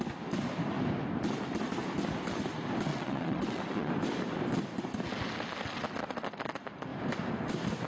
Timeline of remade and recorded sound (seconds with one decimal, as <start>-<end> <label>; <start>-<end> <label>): 0.0-2.9 recorded; 2.9-3.9 remade; 3.9-7.9 recorded